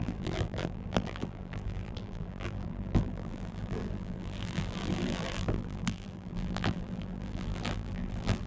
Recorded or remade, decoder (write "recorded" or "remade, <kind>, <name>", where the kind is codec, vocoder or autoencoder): remade, vocoder, BigVGAN v2